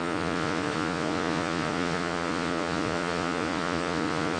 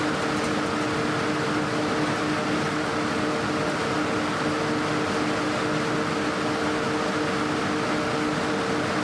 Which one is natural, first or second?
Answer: second